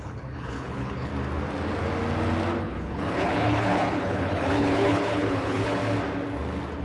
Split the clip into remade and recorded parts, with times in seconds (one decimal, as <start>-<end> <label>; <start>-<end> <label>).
0.0-1.1 remade; 1.1-2.6 recorded; 2.6-5.8 remade; 5.8-6.8 recorded